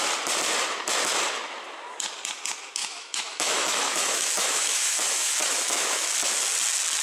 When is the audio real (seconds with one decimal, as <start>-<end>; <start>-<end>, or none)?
0.0-2.8; 6.1-7.0